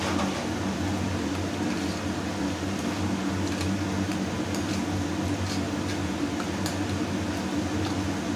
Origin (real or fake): real